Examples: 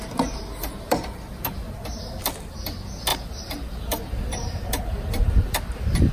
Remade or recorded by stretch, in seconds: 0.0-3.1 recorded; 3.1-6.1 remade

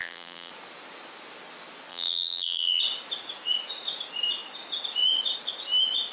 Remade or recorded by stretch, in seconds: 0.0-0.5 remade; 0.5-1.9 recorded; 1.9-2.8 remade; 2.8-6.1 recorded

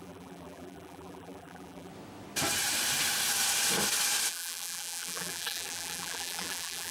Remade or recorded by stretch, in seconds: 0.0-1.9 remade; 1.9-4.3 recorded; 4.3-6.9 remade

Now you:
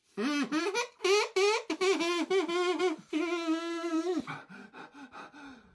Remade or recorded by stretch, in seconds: 0.0-3.9 recorded; 3.9-4.6 remade; 4.6-5.7 recorded

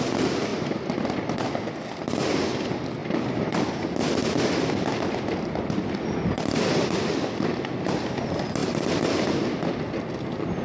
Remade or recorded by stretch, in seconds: 0.0-0.5 recorded; 0.5-1.6 remade; 1.6-3.0 recorded; 3.0-3.7 remade; 3.7-8.6 recorded; 8.6-9.4 remade; 9.4-10.6 recorded

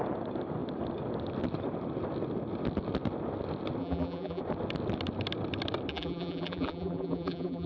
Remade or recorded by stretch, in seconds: 0.0-3.8 recorded; 3.8-4.4 remade; 4.4-5.9 recorded; 5.9-7.7 remade